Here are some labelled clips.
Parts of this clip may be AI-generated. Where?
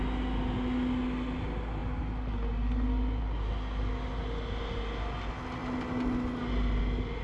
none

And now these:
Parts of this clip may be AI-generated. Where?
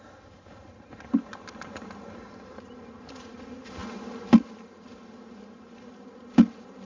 none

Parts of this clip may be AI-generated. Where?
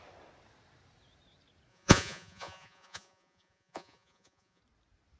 1.7-4.6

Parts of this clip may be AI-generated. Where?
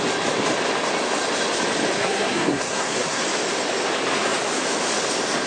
2.0-3.2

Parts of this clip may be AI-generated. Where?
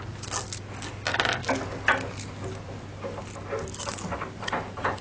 none